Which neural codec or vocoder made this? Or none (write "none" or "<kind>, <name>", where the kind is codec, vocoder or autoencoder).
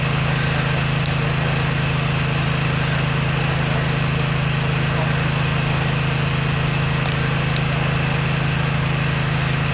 none